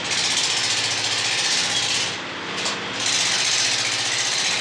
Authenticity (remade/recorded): recorded